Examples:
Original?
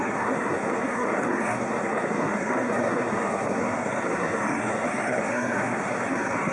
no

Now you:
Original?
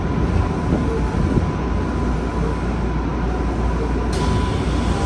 yes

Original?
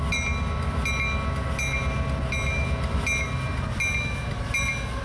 yes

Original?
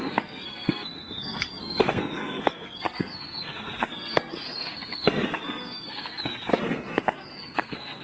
no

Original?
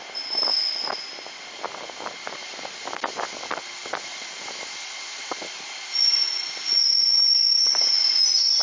yes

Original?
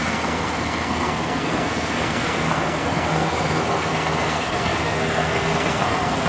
no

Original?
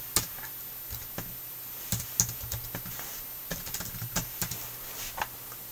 yes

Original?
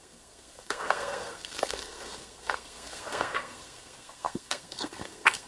no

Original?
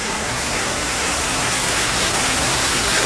no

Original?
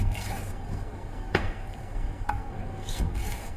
no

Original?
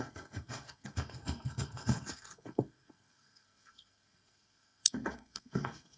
no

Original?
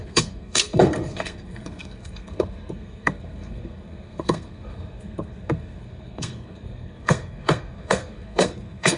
no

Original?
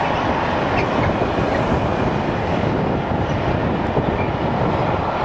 yes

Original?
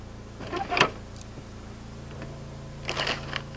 yes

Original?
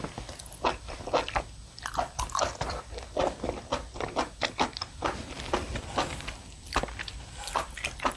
yes